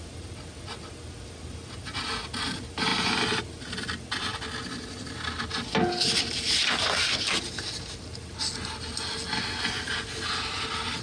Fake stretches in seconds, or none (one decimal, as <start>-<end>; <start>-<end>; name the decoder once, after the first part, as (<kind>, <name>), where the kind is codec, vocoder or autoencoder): none